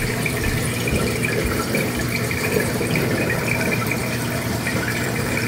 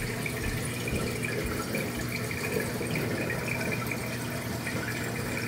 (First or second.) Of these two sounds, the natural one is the second